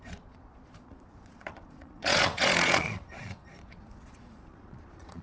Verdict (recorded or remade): remade